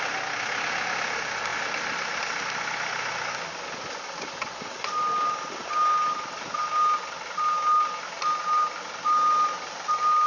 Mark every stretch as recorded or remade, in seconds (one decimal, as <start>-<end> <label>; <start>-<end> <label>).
0.0-10.3 recorded